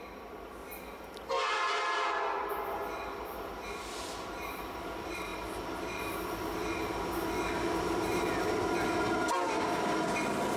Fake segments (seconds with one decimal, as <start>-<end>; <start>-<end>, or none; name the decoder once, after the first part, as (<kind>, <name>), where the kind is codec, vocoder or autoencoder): none